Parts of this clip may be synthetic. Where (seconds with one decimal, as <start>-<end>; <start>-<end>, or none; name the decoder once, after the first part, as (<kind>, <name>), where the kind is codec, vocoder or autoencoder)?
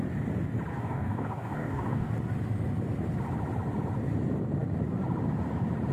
0.7-2.1 (codec, DAC)